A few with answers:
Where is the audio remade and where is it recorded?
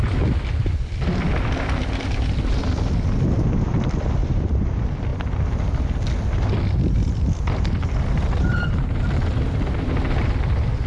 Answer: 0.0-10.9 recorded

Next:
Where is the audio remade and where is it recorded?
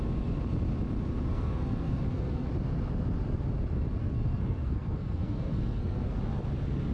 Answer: 0.0-1.3 recorded; 1.3-2.5 remade; 2.5-4.0 recorded; 4.0-6.2 remade; 6.2-6.9 recorded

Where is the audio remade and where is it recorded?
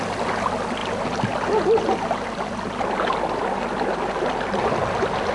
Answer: 0.0-5.3 recorded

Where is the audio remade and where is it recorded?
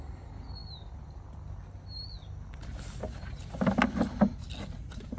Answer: 0.0-5.2 recorded